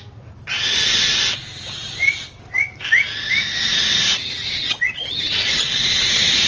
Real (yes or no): yes